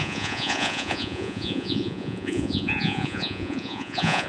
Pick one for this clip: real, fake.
fake